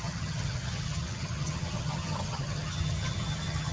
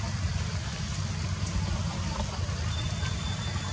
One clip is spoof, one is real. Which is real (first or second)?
second